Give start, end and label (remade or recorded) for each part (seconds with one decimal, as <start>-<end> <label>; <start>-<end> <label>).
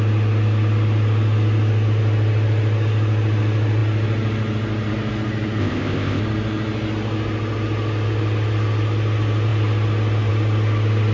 0.0-5.6 recorded; 5.6-6.2 remade; 6.2-11.1 recorded